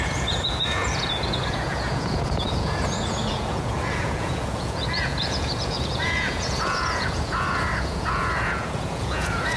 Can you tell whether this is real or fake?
fake